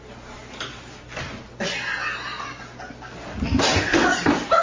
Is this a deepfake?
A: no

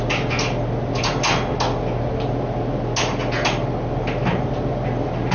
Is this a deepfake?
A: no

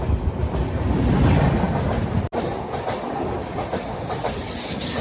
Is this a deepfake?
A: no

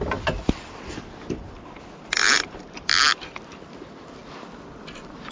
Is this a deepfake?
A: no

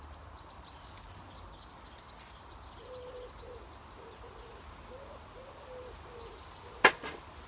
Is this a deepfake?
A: no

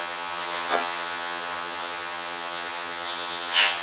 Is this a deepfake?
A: yes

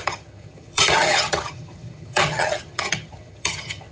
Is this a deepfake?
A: yes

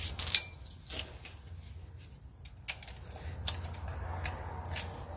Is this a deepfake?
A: no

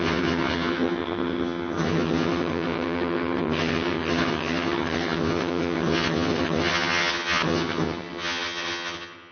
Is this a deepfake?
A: yes